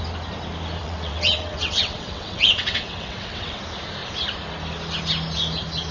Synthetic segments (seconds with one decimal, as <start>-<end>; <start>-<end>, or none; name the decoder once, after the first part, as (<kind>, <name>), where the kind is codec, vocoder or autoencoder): 0.8-3.6 (vocoder, WaveNeXt)